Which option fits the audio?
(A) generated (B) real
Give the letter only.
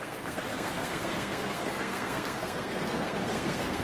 A